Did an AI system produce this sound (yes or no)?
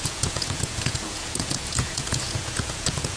yes